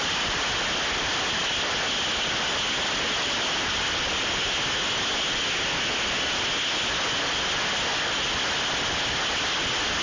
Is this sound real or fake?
real